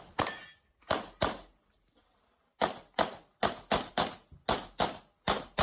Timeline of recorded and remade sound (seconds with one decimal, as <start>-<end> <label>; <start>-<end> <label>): 0.0-5.6 recorded